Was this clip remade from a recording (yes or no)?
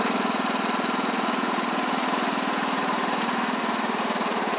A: yes